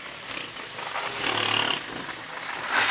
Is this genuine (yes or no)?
yes